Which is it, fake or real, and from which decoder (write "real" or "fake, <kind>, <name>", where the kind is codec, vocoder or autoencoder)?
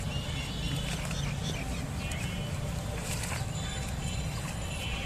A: real